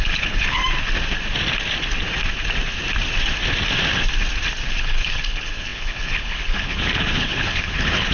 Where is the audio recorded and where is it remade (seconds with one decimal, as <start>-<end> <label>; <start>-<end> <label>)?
0.0-0.6 remade; 0.6-4.8 recorded; 4.8-8.1 remade

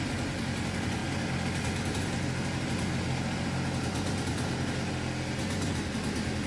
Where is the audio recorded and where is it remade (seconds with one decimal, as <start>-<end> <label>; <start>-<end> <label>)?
0.0-6.5 recorded

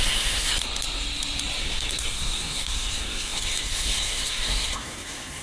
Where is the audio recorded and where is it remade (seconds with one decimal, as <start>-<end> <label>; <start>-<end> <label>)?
0.0-0.5 remade; 0.5-1.6 recorded; 1.6-5.4 remade

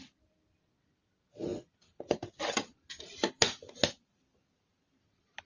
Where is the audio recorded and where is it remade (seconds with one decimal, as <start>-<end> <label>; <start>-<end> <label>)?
0.0-5.4 recorded

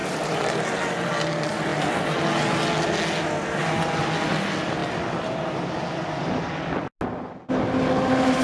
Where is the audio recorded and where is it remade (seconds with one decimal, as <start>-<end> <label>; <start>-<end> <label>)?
0.0-0.6 remade; 0.6-8.4 recorded